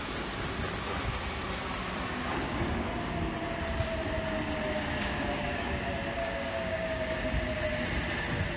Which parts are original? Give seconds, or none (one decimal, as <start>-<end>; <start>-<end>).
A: 0.0-2.3; 2.9-5.0; 5.7-6.2; 7.2-8.6